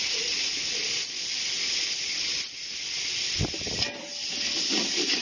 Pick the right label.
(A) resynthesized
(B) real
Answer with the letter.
B